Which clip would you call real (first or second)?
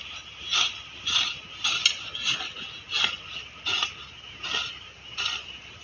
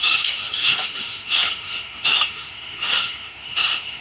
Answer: first